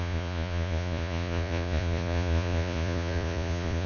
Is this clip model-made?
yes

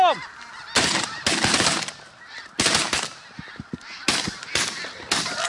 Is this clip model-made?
no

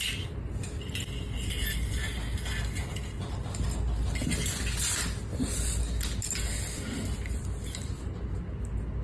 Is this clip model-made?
no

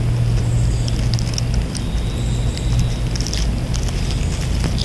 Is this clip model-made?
no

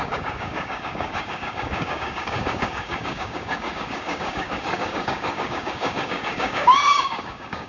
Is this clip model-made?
yes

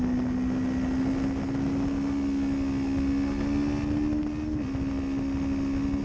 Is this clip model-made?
no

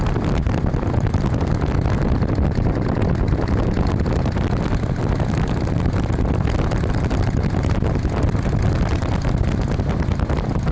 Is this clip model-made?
no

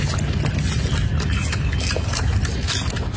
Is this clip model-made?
no